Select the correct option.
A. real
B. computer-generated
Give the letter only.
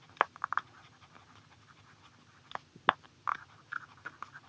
A